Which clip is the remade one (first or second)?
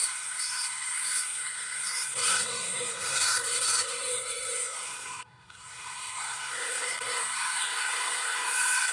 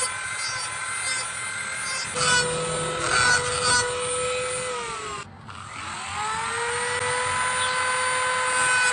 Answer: first